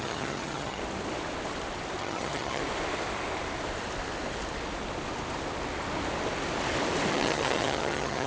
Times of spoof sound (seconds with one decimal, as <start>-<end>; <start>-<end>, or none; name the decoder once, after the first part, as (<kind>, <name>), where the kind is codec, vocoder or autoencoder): 0.0-0.8 (vocoder, HiFi-GAN); 2.0-2.6; 7.1-8.3